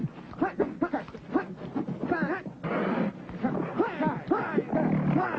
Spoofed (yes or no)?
no